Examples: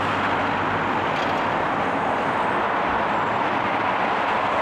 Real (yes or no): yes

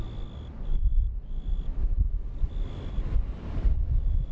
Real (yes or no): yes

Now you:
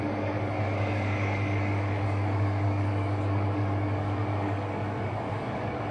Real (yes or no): no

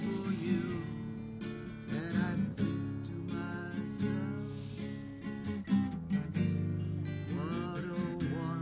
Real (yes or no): yes